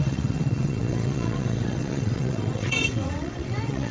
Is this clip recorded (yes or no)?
no